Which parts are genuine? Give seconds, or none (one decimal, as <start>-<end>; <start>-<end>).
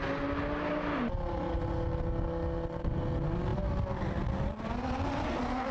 0.0-5.7